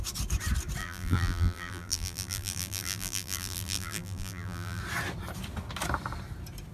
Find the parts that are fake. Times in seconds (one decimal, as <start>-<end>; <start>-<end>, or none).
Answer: 0.8-4.8